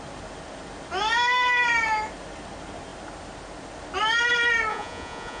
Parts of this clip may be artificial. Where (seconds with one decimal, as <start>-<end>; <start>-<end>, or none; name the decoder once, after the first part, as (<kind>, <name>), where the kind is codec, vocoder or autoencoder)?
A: 4.7-5.4 (vocoder, Vocos)